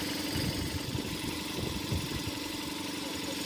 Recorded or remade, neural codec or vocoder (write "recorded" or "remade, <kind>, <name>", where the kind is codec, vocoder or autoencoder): remade, vocoder, BigVGAN v2